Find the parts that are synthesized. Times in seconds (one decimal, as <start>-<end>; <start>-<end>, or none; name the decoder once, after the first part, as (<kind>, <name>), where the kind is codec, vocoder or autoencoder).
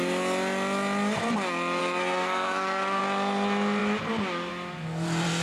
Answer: 1.8-3.0 (codec, SNAC)